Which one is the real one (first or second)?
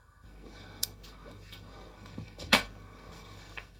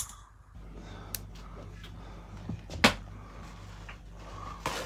second